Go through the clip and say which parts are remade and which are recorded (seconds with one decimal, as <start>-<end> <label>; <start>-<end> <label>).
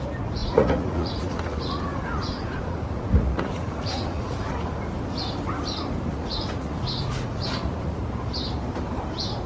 0.0-0.4 recorded; 0.4-4.8 remade; 4.8-6.1 recorded; 6.1-8.0 remade; 8.0-9.5 recorded